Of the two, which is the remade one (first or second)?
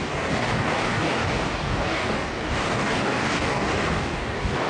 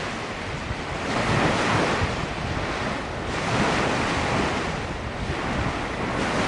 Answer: first